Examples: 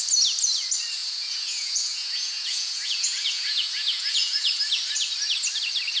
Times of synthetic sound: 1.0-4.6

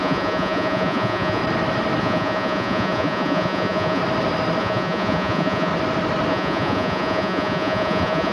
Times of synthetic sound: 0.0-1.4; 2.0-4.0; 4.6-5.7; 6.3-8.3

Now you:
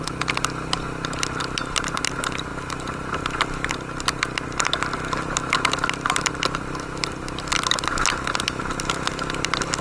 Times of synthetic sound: none

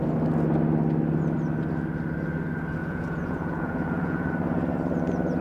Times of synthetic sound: 2.8-4.3